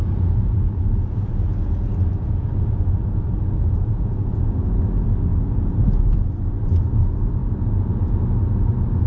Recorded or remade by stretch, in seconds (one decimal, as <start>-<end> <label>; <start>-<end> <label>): 0.0-4.8 remade; 4.8-5.3 recorded; 5.3-6.0 remade; 6.0-9.1 recorded